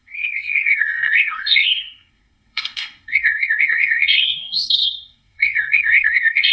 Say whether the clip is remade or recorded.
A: remade